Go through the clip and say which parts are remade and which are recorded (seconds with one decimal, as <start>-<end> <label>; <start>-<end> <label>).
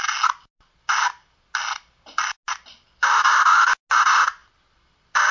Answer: 0.0-5.3 recorded